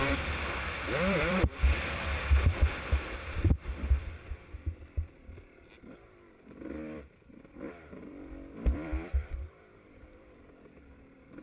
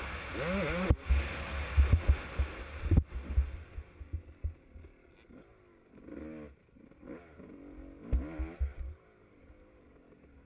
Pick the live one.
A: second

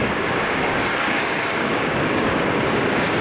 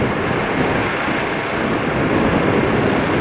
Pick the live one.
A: second